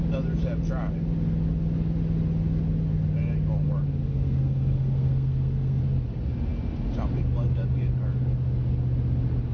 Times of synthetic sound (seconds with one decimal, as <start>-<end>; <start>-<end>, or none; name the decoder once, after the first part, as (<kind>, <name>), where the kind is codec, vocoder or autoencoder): 4.0-5.8 (codec, SNAC)